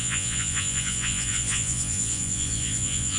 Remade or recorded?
remade